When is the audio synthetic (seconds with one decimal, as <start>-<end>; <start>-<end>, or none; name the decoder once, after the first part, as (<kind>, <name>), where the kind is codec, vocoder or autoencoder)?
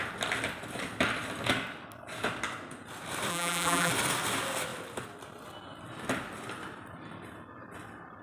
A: 3.3-3.9 (vocoder, BigVGAN v2)